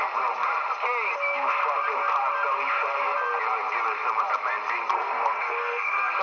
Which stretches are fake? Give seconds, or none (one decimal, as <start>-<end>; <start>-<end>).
4.9-6.2